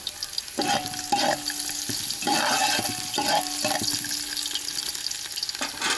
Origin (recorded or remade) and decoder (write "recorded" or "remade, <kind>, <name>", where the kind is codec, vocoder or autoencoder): recorded